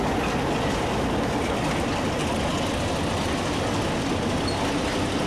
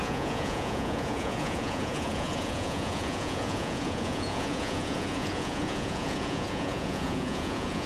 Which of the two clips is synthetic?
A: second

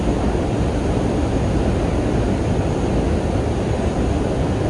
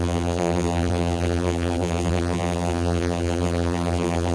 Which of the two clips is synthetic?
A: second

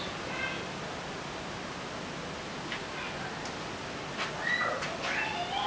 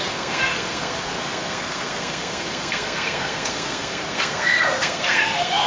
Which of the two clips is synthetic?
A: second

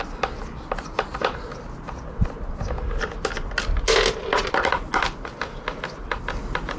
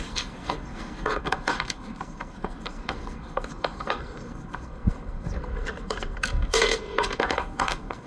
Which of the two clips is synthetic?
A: second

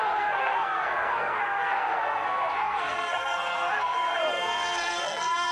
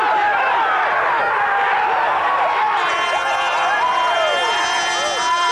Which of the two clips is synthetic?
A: first